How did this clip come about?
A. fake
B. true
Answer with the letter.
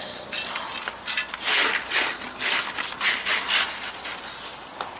B